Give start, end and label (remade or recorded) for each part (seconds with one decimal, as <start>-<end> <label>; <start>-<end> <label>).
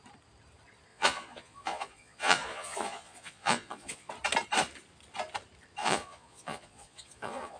0.0-0.9 recorded; 0.9-4.1 remade; 4.1-5.8 recorded; 5.8-7.6 remade